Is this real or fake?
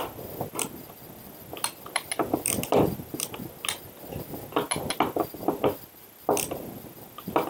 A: real